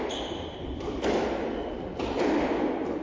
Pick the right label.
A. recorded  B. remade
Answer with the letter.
A